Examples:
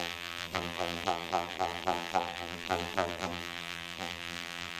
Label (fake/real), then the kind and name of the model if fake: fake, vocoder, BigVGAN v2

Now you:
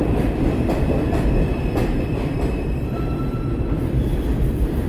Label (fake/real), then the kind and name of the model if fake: fake, vocoder, BigVGAN v2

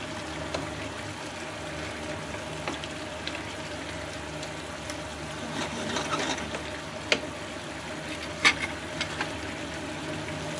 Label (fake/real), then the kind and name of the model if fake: real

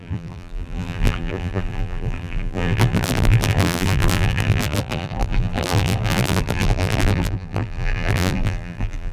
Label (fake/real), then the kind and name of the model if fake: fake, vocoder, BigVGAN v2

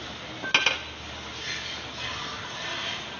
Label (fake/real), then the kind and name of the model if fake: real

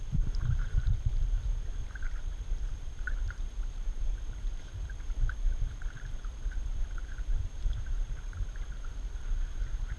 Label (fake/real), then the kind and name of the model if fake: fake, vocoder, BigVGAN v2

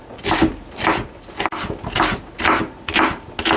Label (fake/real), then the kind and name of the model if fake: real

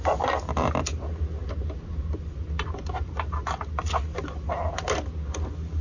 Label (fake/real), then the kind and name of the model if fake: real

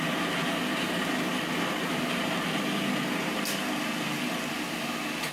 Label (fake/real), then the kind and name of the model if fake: real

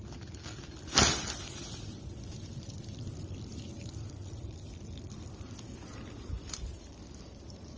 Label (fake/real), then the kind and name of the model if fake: fake, vocoder, BigVGAN v2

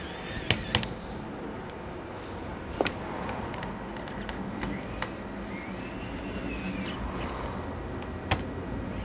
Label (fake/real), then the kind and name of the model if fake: real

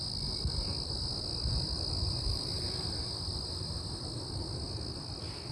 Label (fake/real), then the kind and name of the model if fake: real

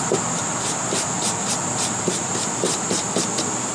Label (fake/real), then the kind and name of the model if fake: real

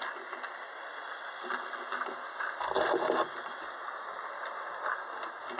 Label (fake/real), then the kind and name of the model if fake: real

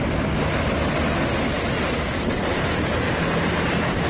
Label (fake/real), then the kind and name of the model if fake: real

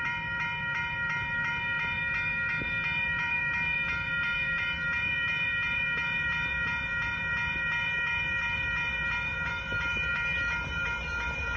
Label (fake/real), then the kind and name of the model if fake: fake, vocoder, BigVGAN v2